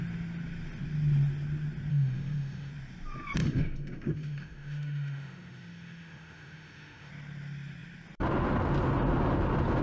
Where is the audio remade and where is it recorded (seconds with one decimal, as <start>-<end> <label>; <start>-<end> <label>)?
0.0-1.9 recorded; 1.9-2.7 remade; 2.7-3.4 recorded; 3.4-7.1 remade; 7.1-9.8 recorded